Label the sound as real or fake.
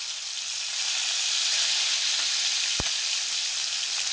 real